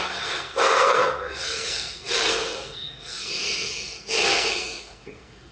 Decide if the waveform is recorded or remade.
remade